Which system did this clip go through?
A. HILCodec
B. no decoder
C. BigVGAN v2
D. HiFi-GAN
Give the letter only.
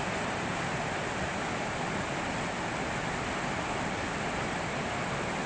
B